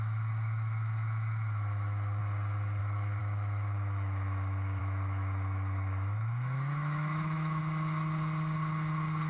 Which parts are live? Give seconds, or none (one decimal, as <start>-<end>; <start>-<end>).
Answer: 2.2-2.8; 7.6-9.3